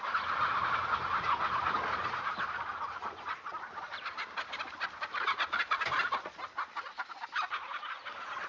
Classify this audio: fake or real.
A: real